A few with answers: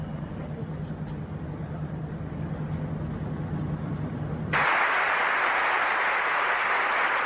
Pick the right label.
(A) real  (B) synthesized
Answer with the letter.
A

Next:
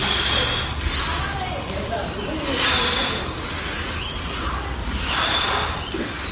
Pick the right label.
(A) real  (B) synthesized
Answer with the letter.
A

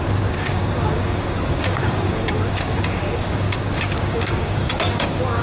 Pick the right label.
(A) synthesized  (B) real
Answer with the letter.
A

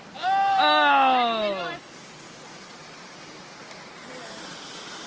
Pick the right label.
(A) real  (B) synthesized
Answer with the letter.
A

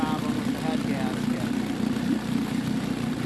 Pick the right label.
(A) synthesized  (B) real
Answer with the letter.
B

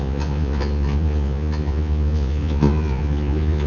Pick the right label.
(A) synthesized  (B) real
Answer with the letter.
A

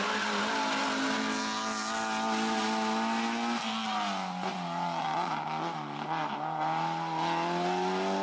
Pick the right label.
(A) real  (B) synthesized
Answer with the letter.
A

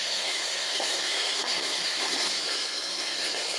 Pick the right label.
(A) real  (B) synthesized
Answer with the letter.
B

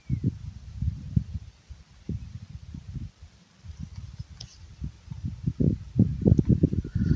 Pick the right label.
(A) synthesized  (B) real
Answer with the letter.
B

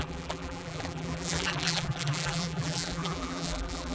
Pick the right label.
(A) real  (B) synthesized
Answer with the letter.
B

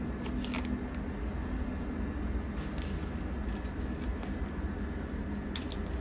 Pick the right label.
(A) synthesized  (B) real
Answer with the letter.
B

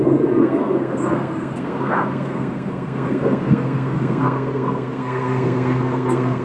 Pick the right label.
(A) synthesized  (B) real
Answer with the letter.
A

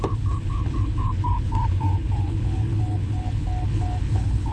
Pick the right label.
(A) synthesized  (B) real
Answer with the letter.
A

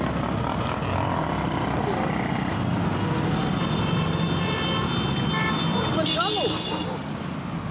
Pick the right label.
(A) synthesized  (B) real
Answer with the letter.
B